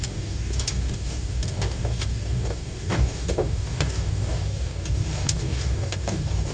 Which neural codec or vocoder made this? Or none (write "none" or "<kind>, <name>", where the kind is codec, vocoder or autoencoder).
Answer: codec, DAC